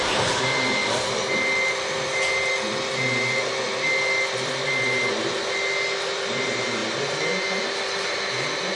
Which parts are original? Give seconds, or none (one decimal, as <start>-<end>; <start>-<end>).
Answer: 0.0-8.8